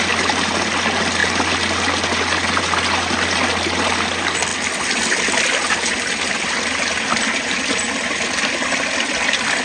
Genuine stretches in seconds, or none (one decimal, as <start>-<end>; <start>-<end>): 0.0-9.6